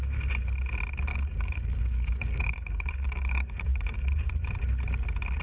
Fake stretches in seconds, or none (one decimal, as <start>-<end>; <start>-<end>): 1.1-4.3